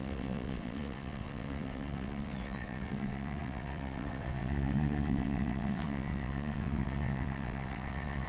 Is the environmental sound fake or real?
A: fake